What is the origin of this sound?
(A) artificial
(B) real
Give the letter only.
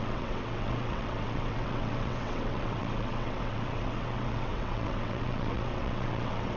A